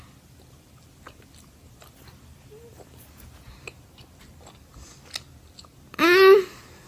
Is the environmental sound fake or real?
real